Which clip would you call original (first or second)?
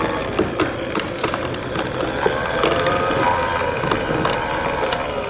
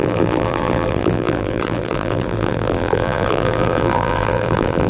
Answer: first